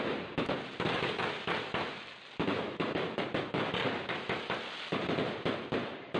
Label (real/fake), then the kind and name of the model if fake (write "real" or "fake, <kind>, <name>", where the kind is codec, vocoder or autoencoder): real